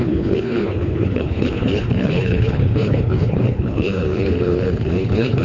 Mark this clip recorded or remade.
remade